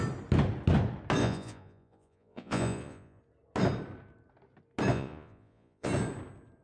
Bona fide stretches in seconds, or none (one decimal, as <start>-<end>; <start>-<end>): 0.0-1.2; 3.2-4.9; 5.9-6.6